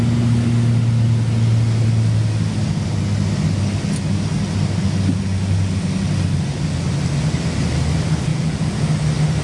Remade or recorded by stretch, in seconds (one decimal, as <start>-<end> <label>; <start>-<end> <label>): 0.0-8.3 recorded; 8.3-8.9 remade; 8.9-9.4 recorded